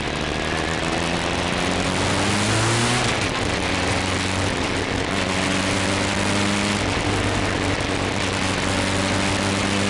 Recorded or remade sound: recorded